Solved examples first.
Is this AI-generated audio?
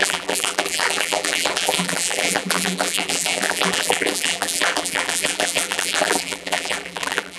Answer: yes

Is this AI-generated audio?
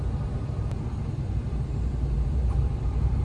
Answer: yes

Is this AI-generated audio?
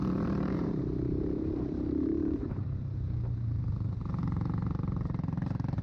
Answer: yes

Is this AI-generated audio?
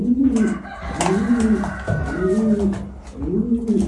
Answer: no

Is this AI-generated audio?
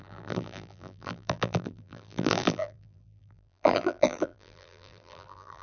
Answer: yes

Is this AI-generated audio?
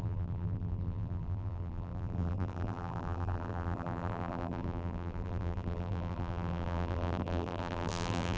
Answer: yes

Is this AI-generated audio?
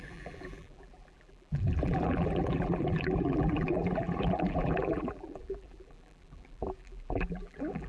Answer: yes